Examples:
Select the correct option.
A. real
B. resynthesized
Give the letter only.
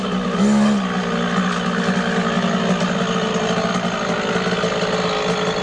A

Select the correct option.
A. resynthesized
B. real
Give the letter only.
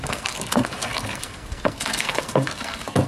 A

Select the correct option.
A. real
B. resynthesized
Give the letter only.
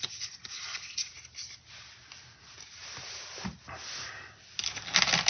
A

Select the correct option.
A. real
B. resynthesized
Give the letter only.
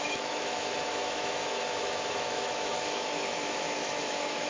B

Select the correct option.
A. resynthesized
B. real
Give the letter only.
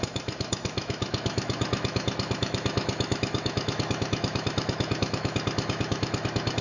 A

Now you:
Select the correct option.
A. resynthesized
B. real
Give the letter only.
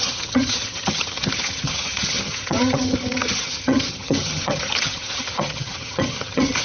A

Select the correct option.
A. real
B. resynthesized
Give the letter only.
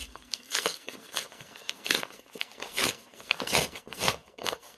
B